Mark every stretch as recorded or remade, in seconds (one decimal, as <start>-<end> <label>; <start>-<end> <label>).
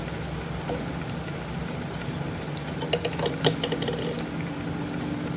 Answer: 0.0-5.4 recorded